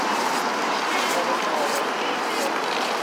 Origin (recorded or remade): recorded